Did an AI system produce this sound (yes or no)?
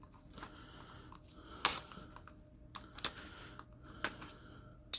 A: no